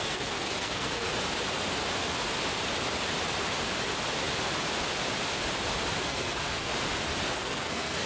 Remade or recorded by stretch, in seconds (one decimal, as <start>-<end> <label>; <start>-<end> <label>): 0.0-1.1 remade; 1.1-6.0 recorded; 6.0-6.7 remade; 6.7-7.3 recorded; 7.3-8.1 remade

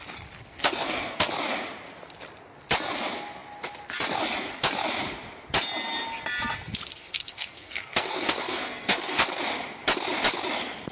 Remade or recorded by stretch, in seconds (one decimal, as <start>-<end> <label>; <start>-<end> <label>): 0.0-0.4 recorded; 0.4-1.3 remade; 1.3-6.9 recorded; 6.9-9.4 remade; 9.4-10.9 recorded